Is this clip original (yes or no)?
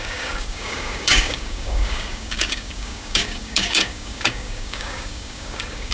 no